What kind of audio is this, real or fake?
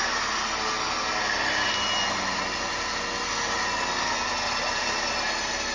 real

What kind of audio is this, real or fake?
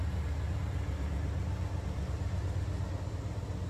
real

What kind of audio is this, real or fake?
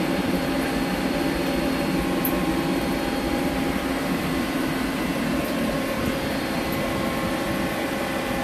fake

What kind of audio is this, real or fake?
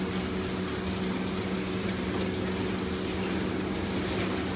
real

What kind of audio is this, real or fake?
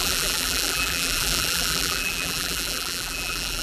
fake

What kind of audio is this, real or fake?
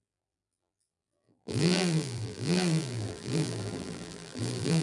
fake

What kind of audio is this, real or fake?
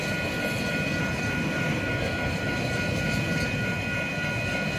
real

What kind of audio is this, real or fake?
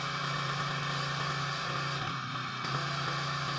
real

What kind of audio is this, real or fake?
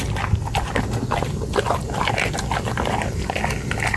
real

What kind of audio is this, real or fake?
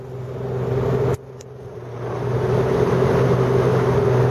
real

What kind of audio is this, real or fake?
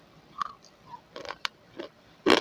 fake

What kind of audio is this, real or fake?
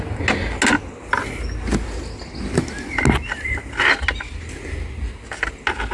real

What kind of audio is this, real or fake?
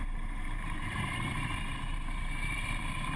fake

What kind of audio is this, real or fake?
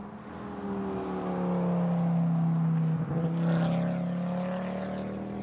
real